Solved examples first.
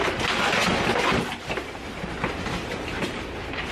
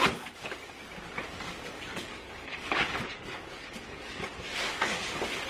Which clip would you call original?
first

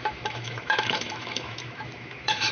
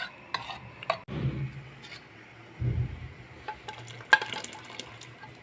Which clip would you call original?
second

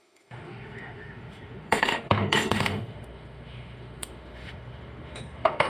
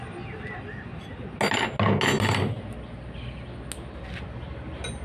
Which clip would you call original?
second